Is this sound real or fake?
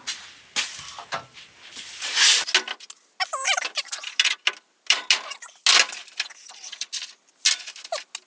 real